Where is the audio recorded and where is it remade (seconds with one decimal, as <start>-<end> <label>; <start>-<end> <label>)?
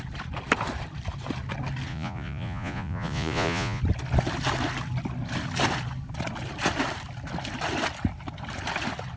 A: 0.0-1.9 recorded; 1.9-3.8 remade; 3.8-9.2 recorded